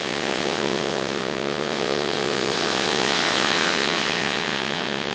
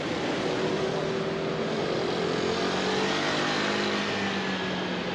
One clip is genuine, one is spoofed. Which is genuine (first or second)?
second